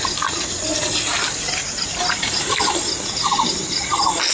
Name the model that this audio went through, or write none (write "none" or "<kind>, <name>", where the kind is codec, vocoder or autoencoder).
none